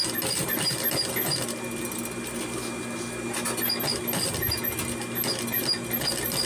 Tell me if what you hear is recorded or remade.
recorded